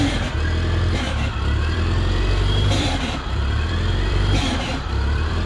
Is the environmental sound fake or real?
fake